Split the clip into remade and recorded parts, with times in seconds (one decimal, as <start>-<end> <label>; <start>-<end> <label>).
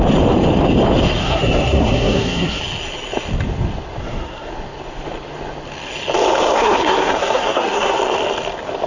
0.0-1.2 recorded; 1.2-2.6 remade; 2.6-4.0 recorded; 4.0-4.5 remade; 4.5-6.6 recorded; 6.6-8.0 remade; 8.0-8.9 recorded